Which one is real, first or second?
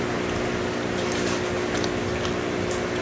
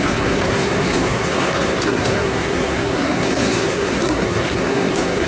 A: first